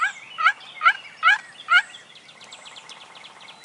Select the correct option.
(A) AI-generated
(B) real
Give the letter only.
B